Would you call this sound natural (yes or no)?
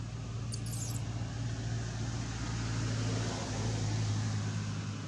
yes